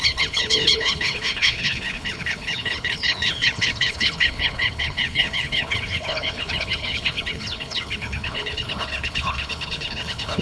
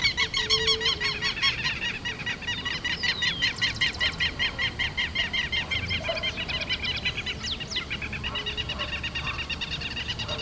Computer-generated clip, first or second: first